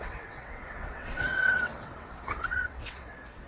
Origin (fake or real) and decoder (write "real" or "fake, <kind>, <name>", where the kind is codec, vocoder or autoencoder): fake, vocoder, WaveNeXt